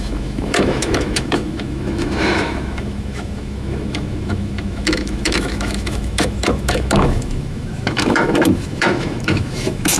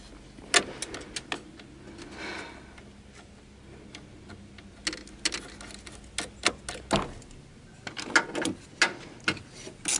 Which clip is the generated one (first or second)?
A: first